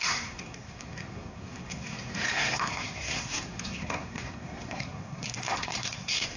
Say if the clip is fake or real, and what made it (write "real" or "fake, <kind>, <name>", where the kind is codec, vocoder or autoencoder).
fake, codec, SNAC